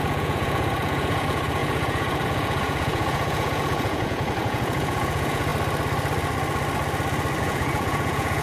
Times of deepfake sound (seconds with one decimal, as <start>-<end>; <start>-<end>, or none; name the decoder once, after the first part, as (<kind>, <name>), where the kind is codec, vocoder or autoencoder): 0.0-5.5 (vocoder, Vocos); 7.4-8.4